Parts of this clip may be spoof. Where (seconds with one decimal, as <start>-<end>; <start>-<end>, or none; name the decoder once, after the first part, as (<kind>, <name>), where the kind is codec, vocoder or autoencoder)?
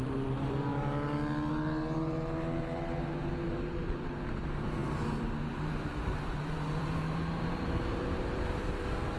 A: 0.0-0.7 (vocoder, BigVGAN v2); 1.5-9.2